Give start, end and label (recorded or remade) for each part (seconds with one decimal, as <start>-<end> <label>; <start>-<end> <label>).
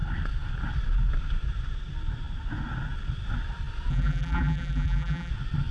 0.0-3.9 recorded; 3.9-5.3 remade; 5.3-5.7 recorded